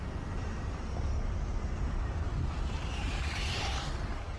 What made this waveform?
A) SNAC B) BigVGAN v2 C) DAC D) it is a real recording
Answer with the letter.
D